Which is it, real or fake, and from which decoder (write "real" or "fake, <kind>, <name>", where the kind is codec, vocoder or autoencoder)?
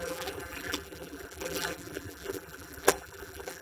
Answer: fake, vocoder, BigVGAN v2